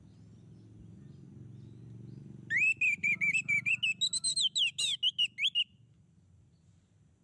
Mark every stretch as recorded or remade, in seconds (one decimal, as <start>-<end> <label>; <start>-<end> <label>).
0.0-3.0 recorded; 3.0-3.7 remade; 3.7-7.2 recorded